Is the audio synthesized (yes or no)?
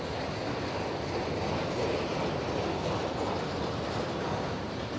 no